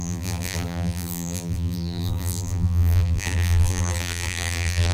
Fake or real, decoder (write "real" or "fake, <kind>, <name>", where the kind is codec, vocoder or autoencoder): fake, vocoder, BigVGAN v2